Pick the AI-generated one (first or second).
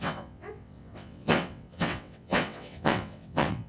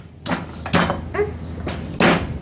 first